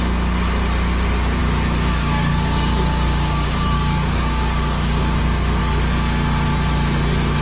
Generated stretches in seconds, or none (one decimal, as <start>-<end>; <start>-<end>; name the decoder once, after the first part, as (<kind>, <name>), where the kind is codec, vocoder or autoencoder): 1.4-5.6 (codec, DAC)